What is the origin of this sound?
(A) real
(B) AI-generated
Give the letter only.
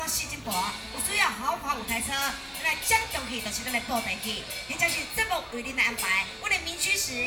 A